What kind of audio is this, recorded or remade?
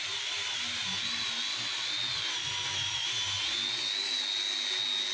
recorded